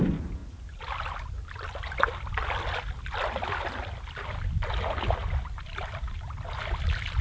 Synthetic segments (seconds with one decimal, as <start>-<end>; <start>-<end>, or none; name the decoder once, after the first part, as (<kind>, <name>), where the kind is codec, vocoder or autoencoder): none